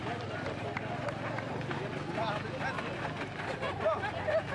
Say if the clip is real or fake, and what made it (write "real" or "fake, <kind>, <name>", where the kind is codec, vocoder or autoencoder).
real